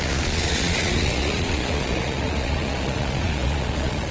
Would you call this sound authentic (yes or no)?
no